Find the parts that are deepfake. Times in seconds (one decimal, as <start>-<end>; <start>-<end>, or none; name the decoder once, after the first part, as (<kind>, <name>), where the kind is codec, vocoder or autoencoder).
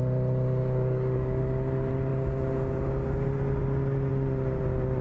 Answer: 0.6-1.4 (codec, DAC)